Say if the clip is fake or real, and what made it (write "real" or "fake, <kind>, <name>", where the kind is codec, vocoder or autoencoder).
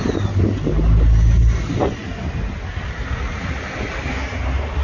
real